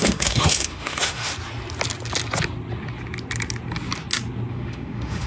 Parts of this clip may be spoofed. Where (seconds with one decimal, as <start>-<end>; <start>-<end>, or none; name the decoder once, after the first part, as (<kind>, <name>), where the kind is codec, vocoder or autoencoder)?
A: 0.0-1.3 (autoencoder, DAC-VAE); 4.5-5.3